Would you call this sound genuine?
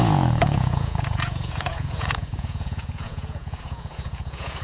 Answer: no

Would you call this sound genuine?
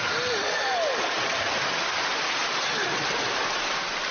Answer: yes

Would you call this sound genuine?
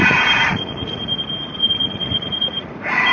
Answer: no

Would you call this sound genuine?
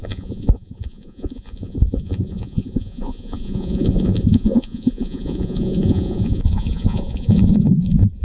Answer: no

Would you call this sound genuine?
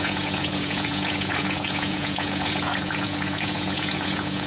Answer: no